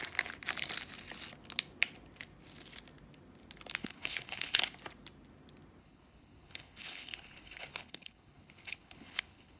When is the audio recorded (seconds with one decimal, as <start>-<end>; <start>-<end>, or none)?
0.0-3.8; 4.6-5.8